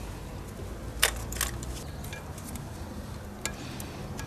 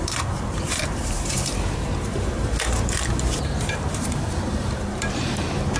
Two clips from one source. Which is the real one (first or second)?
first